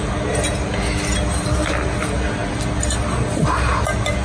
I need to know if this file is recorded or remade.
recorded